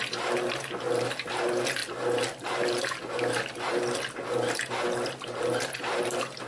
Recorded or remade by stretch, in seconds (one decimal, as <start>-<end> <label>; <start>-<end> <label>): 0.0-6.5 recorded